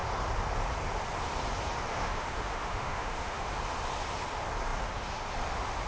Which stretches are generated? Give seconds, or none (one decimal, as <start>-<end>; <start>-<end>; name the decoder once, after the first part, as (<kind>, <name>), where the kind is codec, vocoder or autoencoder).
1.9-3.5 (autoencoder, DAC-VAE)

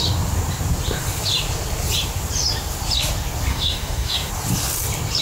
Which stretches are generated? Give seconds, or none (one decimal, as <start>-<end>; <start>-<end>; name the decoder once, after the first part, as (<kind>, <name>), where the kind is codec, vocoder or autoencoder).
3.5-4.3 (codec, DAC)

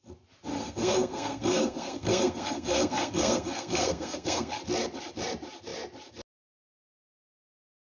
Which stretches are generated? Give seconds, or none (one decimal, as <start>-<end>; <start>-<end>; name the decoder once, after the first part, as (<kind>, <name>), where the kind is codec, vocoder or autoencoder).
0.5-4.5 (codec, SNAC)

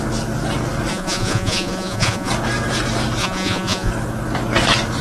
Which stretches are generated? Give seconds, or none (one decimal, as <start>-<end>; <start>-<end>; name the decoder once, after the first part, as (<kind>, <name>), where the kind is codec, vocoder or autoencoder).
0.9-2.3 (vocoder, Vocos); 3.2-3.9

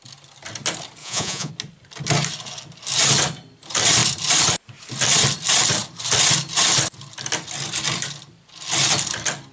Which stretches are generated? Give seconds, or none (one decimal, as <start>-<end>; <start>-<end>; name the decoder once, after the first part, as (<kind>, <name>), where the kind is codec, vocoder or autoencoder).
1.0-1.5 (vocoder, Vocos)

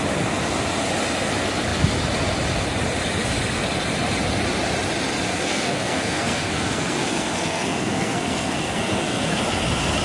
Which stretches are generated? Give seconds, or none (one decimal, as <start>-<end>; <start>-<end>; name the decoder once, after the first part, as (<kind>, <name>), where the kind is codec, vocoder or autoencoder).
5.3-9.4 (codec, SNAC)